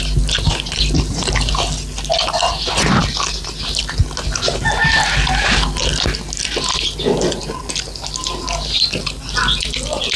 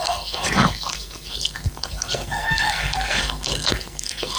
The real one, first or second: first